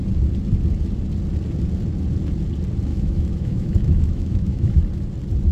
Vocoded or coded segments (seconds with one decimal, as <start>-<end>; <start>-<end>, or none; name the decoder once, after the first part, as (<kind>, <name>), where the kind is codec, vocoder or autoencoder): 2.9-4.8 (autoencoder, DAC-VAE)